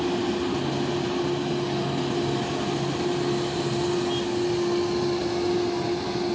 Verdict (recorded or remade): recorded